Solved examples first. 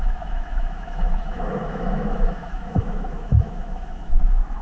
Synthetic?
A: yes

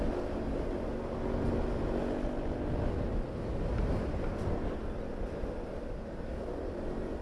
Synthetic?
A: no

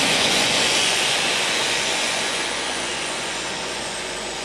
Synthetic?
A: yes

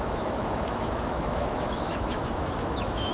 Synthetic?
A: yes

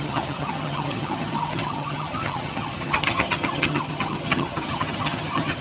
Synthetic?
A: yes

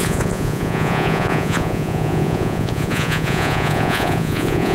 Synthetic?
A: yes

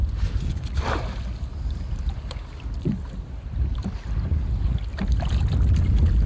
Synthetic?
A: no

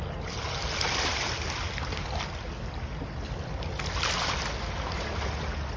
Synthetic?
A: no